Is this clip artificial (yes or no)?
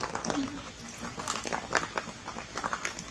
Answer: no